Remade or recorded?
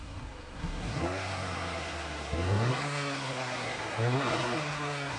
remade